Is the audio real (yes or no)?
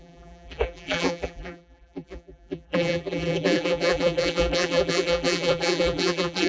no